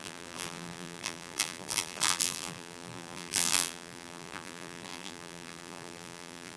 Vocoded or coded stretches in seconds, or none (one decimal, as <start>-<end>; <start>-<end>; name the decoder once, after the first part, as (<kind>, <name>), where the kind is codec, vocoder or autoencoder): 0.0-6.6 (vocoder, BigVGAN v2)